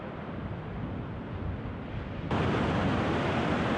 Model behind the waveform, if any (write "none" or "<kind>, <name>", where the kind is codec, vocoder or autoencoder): none